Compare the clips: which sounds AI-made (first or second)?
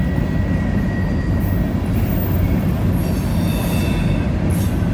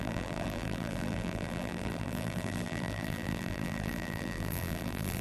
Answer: second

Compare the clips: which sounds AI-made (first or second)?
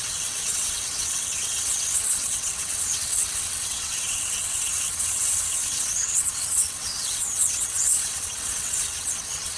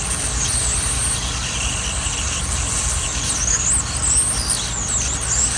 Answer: first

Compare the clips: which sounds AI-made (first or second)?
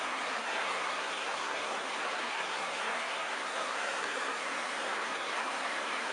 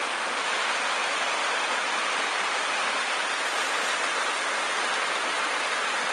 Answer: first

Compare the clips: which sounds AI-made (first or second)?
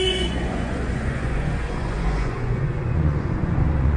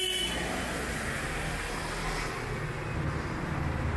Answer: first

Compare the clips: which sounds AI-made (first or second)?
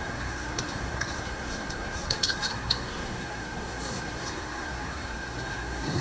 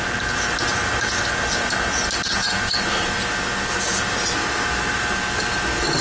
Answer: first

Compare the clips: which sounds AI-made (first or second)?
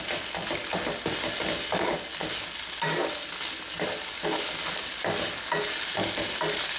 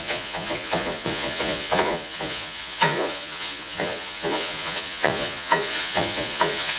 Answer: second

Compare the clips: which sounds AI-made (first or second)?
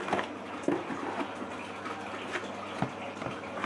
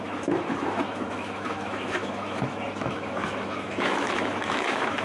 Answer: second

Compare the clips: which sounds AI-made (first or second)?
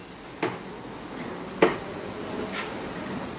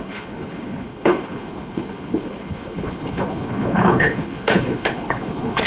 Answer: second